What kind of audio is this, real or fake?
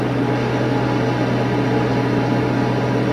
real